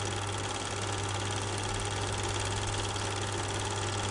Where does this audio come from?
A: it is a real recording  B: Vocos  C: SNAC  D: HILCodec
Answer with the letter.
A